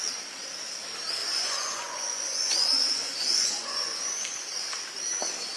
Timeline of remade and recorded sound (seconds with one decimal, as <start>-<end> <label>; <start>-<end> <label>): 0.0-1.2 recorded; 1.2-4.6 remade; 4.6-5.6 recorded